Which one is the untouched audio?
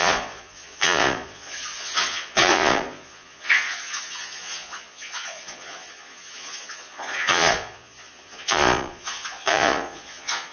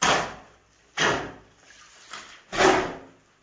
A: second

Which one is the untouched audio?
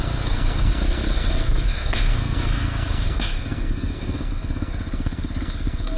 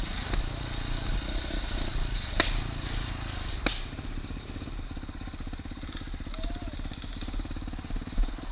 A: second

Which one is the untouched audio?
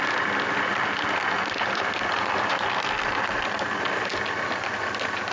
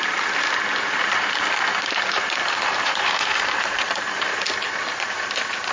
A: first